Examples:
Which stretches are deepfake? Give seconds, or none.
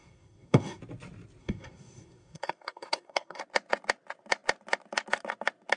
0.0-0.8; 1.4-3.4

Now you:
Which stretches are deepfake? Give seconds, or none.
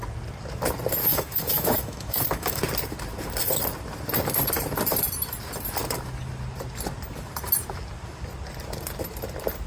1.0-2.6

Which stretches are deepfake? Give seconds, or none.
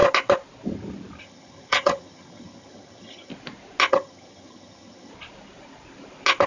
1.2-3.3; 3.9-5.1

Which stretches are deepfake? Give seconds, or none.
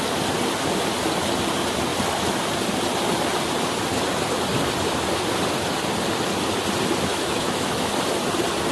7.1-7.9